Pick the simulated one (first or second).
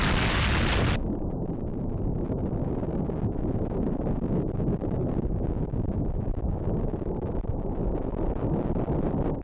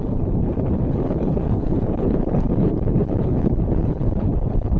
second